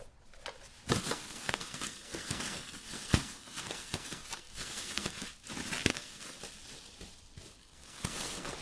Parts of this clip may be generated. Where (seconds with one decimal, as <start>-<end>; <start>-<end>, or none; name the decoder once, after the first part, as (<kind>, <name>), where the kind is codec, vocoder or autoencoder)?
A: 1.0-5.3 (codec, SNAC); 5.9-6.4; 7.6-8.6